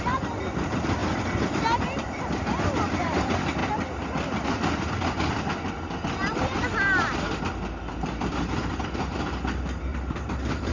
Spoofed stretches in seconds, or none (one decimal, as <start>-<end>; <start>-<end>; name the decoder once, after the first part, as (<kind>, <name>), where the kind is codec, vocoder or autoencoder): 0.0-3.6 (vocoder, BigVGAN v2); 8.3-10.7